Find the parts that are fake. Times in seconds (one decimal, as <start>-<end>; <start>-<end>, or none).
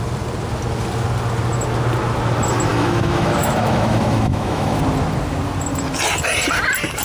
2.7-4.8